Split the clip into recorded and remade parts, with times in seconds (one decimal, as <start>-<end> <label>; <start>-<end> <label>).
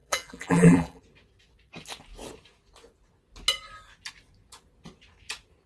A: 0.0-1.0 remade; 1.0-5.7 recorded